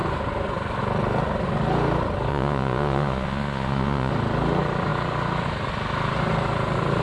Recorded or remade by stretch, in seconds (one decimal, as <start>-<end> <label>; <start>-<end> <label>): 0.0-2.3 recorded; 2.3-4.1 remade; 4.1-7.0 recorded